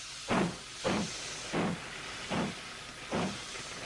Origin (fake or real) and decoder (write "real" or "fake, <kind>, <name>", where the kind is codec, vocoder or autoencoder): real